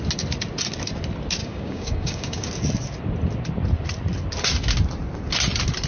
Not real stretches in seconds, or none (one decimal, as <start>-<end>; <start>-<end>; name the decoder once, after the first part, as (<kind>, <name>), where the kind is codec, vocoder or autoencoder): 1.4-2.5 (codec, DAC)